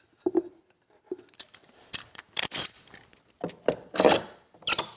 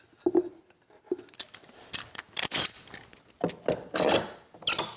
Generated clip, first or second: first